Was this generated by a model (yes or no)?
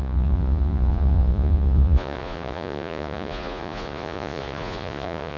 yes